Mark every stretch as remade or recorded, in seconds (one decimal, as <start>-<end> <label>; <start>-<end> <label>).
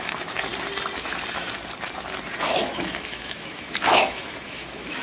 0.0-0.5 remade; 0.5-2.7 recorded; 2.7-5.0 remade